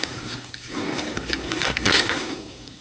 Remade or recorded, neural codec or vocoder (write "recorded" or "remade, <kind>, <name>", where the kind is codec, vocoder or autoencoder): remade, codec, SNAC